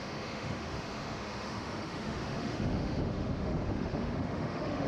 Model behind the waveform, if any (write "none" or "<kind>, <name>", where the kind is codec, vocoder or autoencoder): autoencoder, DAC-VAE